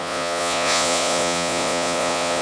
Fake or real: fake